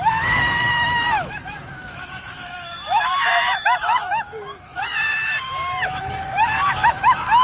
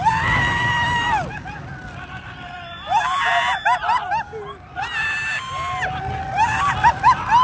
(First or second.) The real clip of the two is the second